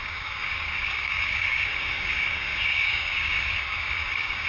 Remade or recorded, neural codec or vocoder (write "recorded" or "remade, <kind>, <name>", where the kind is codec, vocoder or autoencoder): remade, codec, DAC